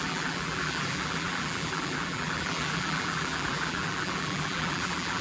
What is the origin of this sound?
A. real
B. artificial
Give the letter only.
B